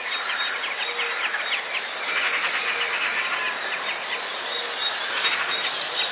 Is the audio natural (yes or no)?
yes